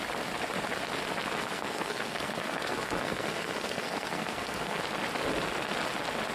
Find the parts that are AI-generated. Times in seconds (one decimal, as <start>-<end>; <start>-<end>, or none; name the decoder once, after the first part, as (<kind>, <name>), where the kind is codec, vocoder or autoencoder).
1.4-4.8 (codec, SNAC)

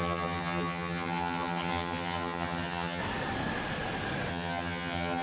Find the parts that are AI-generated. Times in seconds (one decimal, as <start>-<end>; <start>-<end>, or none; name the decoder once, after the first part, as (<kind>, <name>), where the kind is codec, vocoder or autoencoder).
0.0-3.0 (vocoder, HiFi-GAN); 4.3-5.2

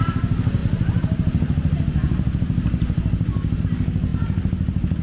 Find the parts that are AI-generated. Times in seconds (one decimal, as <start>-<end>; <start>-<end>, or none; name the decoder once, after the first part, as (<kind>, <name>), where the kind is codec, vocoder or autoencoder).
none

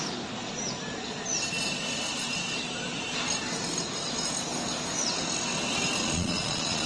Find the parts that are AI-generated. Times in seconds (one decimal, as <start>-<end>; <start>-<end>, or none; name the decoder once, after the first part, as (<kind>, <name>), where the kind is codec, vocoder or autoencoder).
6.0-6.9 (vocoder, Vocos)